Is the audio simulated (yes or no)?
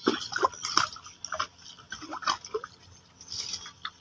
no